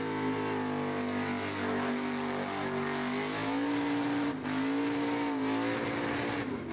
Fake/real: real